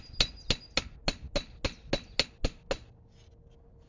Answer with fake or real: real